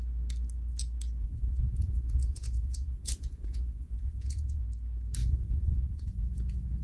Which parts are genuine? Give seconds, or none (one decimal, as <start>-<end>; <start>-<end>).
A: 0.0-1.2; 4.6-5.2